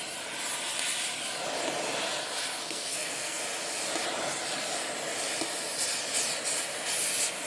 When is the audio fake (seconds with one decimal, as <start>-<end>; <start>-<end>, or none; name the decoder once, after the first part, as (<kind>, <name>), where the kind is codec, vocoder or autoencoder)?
2.6-3.4 (codec, SNAC)